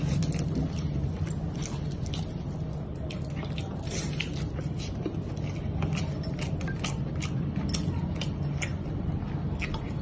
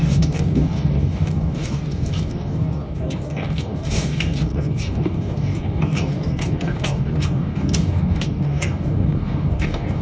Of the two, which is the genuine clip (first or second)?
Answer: first